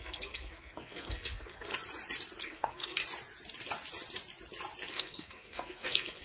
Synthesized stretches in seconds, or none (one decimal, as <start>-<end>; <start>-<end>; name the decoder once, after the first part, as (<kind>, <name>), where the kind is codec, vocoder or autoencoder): 0.0-1.7 (codec, SNAC); 2.4-3.0; 4.9-6.2